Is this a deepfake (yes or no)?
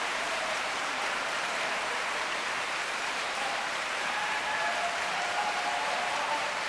yes